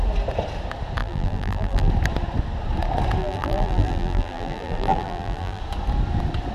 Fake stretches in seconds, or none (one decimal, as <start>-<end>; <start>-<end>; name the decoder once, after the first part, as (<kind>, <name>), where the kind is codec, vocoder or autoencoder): 1.0-1.9 (vocoder, BigVGAN v2); 3.2-5.6